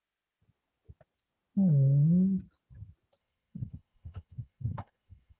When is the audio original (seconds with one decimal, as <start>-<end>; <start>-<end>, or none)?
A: 0.0-3.2